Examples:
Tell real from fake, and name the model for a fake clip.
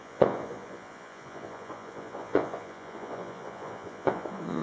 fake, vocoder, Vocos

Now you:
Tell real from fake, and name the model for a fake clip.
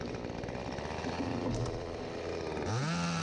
real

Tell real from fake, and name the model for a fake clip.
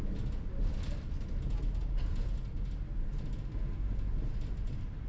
real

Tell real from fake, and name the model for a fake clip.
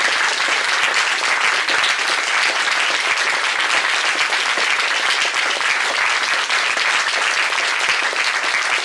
real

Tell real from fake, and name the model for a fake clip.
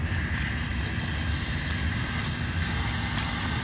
real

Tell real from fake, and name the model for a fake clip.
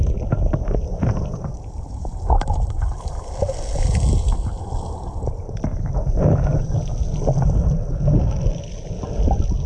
real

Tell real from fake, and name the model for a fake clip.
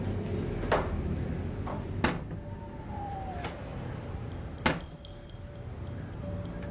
real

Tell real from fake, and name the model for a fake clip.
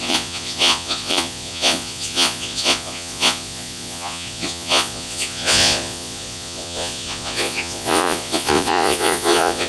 fake, vocoder, Vocos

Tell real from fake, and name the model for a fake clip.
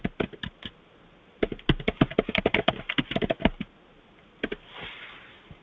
real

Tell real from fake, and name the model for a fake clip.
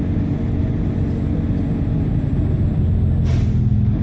real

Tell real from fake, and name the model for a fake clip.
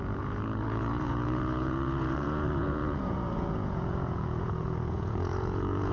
fake, vocoder, Vocos